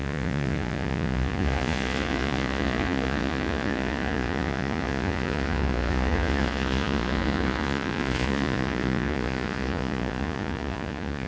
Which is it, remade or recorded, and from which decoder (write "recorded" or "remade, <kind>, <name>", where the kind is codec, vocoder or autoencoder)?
remade, vocoder, Vocos